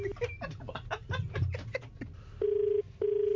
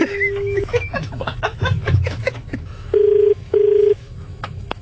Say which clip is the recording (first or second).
first